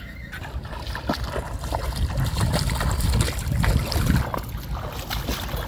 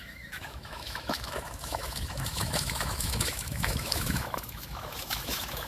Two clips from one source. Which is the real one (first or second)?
first